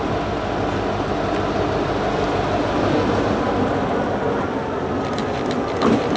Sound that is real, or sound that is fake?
real